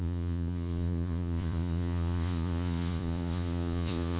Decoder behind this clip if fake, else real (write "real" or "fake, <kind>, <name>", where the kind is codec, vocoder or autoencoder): fake, vocoder, Vocos